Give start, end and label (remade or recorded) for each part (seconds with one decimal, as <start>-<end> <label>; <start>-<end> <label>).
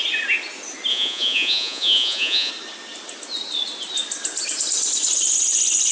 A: 0.0-0.9 recorded; 0.9-2.5 remade; 2.5-5.9 recorded